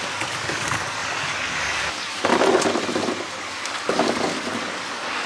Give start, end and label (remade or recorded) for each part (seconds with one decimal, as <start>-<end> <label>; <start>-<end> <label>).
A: 0.0-2.3 remade; 2.3-3.4 recorded; 3.4-5.3 remade